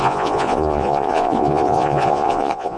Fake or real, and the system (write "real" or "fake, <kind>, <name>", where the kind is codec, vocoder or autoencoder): fake, vocoder, Vocos